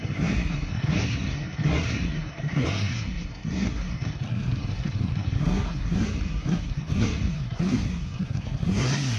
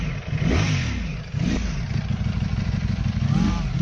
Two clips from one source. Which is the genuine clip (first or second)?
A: second